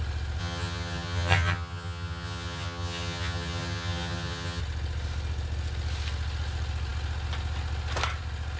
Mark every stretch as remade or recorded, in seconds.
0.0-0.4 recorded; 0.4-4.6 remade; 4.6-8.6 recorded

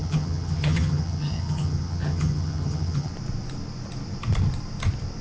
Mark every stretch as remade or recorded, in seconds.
0.0-3.1 remade; 3.1-5.2 recorded